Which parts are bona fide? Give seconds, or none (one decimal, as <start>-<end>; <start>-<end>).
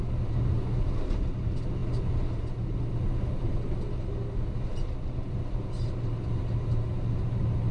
0.0-7.7